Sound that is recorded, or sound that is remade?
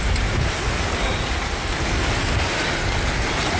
recorded